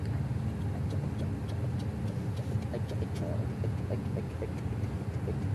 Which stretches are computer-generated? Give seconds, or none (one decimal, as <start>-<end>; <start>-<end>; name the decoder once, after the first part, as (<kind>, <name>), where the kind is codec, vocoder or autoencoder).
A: 2.7-4.2 (vocoder, Vocos)